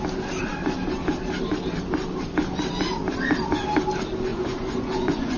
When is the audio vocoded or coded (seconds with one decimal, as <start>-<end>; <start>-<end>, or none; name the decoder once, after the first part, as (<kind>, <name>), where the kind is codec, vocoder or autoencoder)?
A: 4.3-5.4 (vocoder, Vocos)